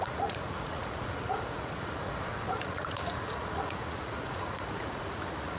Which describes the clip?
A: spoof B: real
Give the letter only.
A